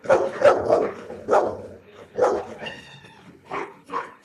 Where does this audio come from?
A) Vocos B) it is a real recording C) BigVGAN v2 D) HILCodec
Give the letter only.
D